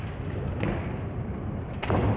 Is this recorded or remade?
recorded